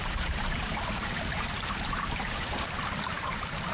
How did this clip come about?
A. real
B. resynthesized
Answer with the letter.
B